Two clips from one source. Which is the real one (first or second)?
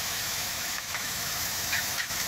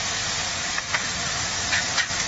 second